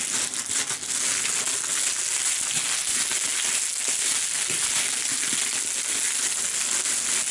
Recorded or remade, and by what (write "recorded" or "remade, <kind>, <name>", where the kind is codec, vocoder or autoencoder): recorded